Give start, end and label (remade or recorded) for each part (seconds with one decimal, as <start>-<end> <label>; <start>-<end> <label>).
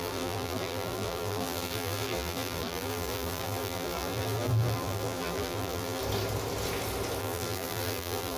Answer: 0.0-6.0 remade; 6.0-7.2 recorded; 7.2-8.4 remade